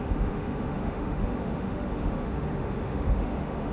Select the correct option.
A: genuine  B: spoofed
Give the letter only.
B